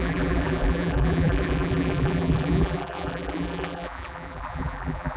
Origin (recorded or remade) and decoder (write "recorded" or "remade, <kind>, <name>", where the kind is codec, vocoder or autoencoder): remade, vocoder, BigVGAN v2